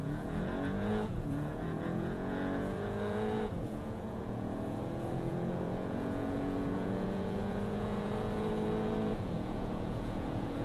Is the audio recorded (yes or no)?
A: no